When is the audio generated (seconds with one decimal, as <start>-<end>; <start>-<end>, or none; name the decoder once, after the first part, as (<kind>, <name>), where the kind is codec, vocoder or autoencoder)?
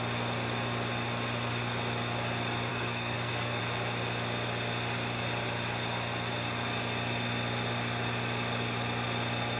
2.7-3.6 (codec, SNAC)